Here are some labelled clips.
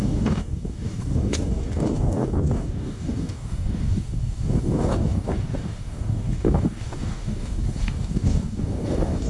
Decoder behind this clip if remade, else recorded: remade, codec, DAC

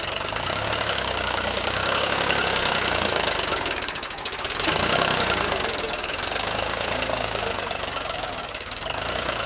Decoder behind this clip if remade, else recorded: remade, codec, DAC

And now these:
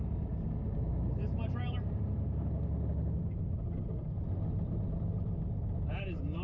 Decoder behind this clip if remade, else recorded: recorded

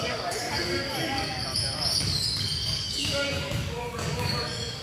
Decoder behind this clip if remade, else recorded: remade, codec, DAC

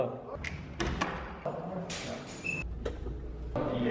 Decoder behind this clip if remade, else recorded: recorded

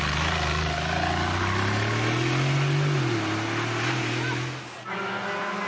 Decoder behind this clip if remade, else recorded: recorded